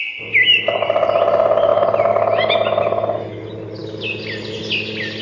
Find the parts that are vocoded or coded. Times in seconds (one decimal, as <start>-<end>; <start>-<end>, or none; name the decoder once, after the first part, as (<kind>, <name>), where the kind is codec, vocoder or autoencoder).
none